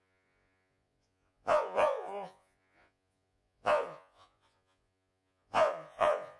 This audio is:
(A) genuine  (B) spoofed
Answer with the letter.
B